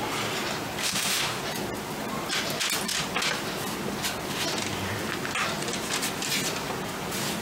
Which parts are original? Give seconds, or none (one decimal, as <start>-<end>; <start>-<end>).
0.0-0.8; 1.4-7.4